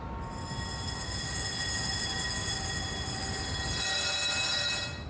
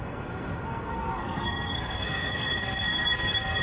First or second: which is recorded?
first